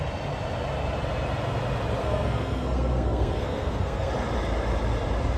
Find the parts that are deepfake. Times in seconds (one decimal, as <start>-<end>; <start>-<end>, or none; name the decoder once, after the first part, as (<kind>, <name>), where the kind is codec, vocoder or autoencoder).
2.0-4.1 (codec, SNAC)